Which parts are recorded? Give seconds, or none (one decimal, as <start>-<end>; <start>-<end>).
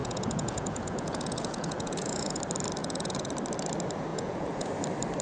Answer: 2.4-2.8; 3.3-4.1; 4.7-5.2